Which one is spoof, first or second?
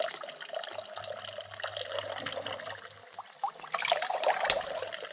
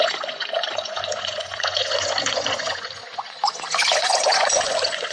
second